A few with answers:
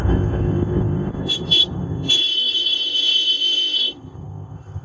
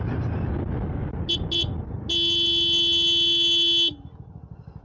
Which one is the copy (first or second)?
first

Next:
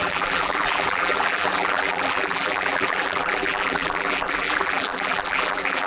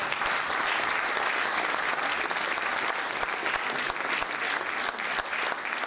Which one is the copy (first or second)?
first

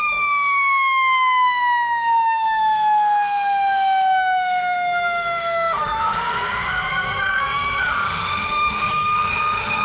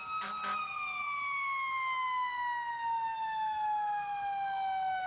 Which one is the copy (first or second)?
first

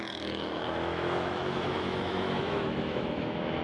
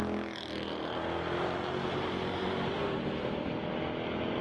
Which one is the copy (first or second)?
first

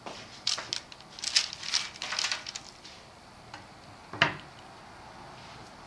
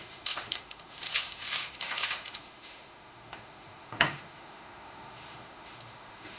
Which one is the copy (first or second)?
second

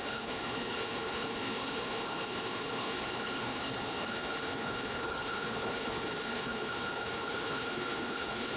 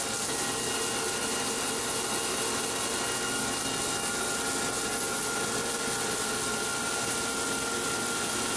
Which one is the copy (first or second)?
first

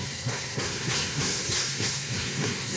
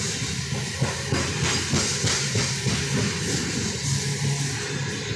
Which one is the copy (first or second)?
first